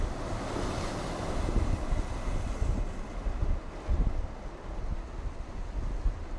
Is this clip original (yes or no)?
yes